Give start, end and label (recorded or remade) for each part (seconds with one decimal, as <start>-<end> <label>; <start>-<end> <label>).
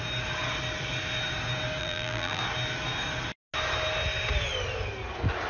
0.0-1.8 recorded; 1.8-2.4 remade; 2.4-5.5 recorded